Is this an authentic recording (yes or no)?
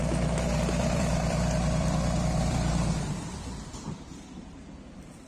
no